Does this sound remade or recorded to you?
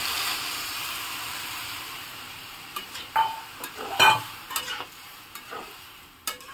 remade